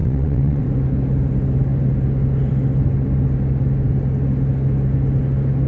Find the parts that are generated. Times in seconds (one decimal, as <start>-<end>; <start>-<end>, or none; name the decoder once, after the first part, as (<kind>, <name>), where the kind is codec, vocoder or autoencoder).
0.0-0.6 (vocoder, WaveNeXt)